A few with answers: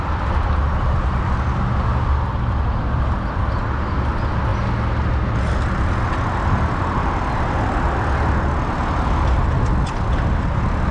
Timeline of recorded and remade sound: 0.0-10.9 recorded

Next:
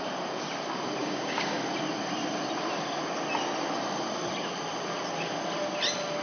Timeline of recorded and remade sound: 0.0-1.0 recorded; 1.0-1.6 remade; 1.6-6.2 recorded

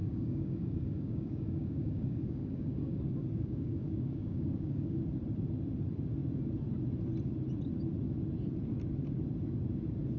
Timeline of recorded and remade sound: 0.0-5.0 remade; 5.0-10.2 recorded

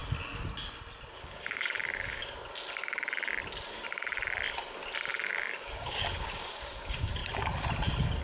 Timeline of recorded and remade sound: 0.0-1.1 recorded; 1.1-2.2 remade; 2.2-5.1 recorded; 5.1-7.2 remade; 7.2-8.2 recorded

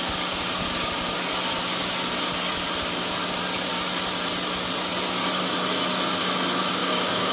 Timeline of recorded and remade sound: 0.0-6.8 recorded; 6.8-7.3 remade

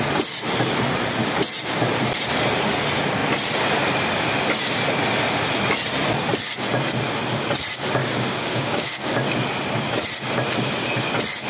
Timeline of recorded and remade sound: 0.0-8.0 recorded; 8.0-8.9 remade; 8.9-11.5 recorded

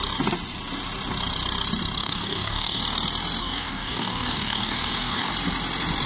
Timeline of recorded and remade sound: 0.0-2.0 recorded; 2.0-2.8 remade; 2.8-3.4 recorded; 3.4-5.3 remade; 5.3-6.1 recorded

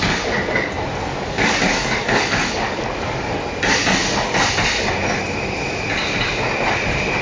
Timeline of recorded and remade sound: 0.0-1.1 recorded; 1.1-3.4 remade; 3.4-7.2 recorded